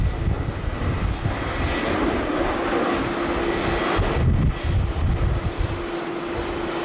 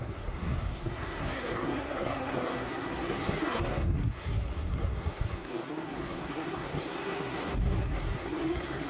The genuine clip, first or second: first